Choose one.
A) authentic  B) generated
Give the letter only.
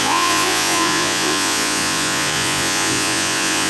B